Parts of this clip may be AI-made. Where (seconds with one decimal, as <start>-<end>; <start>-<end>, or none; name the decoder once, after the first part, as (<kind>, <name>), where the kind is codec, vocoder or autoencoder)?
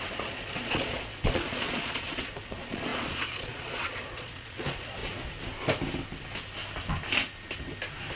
0.0-5.0 (vocoder, Vocos)